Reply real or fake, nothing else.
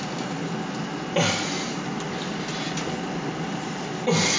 real